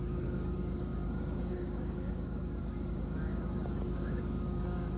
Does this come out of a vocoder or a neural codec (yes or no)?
yes